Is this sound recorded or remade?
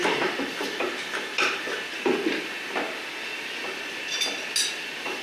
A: recorded